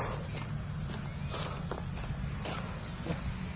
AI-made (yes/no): no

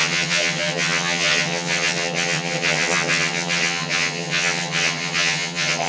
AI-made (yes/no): yes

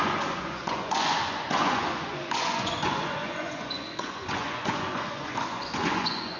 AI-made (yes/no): yes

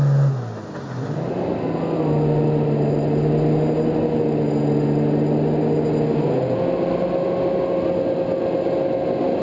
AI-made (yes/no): no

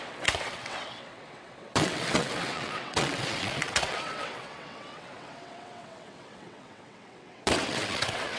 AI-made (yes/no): yes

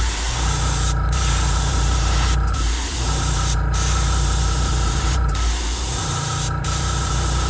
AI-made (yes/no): yes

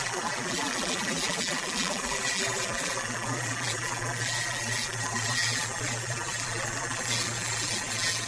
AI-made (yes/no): yes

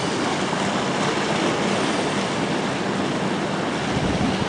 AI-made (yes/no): no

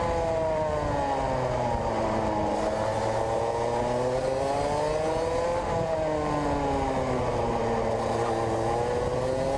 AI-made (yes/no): no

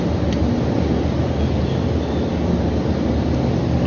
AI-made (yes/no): no